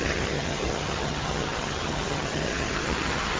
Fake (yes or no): yes